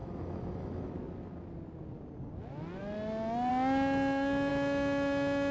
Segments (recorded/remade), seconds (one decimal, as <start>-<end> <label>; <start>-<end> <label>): 0.0-0.9 remade; 0.9-5.5 recorded